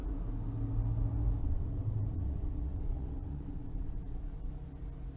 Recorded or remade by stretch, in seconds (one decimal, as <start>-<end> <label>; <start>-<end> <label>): 0.0-1.4 recorded; 1.4-4.5 remade; 4.5-5.2 recorded